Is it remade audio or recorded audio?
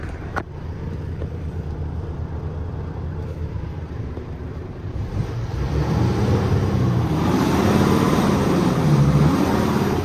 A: remade